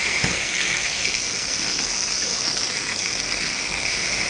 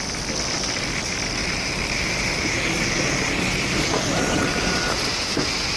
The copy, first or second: first